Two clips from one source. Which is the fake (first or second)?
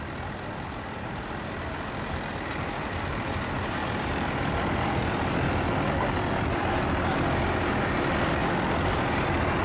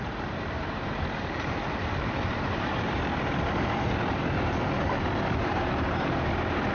second